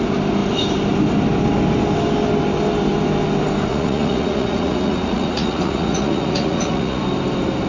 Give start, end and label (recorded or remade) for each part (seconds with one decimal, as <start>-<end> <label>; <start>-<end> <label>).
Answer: 0.0-3.7 recorded; 3.7-7.0 remade; 7.0-7.7 recorded